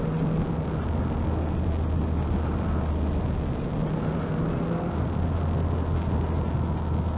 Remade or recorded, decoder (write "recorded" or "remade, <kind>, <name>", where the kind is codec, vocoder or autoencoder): recorded